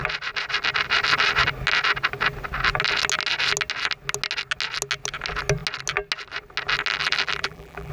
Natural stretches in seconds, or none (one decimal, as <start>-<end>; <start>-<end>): 0.0-6.9